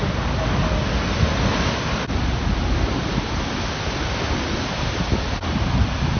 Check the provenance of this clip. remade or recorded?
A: recorded